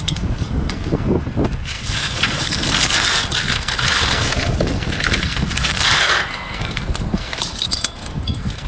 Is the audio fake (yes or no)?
yes